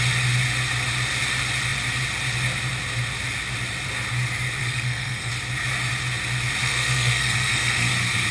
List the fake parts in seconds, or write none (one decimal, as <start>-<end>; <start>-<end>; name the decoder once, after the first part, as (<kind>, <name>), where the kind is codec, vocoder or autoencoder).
4.6-5.3 (codec, SNAC); 6.6-7.9